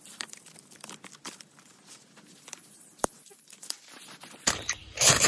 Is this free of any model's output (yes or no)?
no